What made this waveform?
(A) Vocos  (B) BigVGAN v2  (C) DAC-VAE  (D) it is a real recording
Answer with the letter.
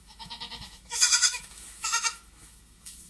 C